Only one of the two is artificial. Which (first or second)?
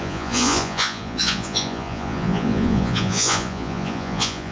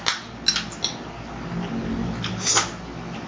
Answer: first